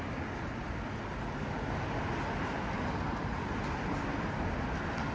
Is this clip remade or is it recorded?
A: recorded